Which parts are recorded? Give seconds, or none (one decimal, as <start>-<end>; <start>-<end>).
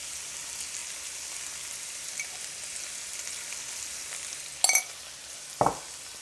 0.0-6.2